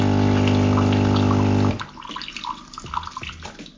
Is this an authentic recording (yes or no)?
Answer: yes